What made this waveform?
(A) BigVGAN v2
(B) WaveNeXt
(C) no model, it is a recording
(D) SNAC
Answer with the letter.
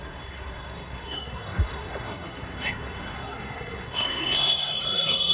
D